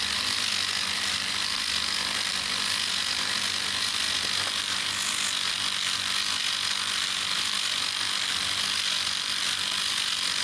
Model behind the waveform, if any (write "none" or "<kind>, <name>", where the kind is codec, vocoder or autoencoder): none